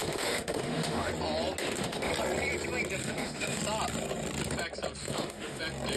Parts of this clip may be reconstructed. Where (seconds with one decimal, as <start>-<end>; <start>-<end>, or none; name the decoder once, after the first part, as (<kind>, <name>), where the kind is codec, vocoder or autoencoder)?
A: 0.0-1.1 (autoencoder, DAC-VAE); 1.6-2.1; 3.0-3.6; 5.0-5.6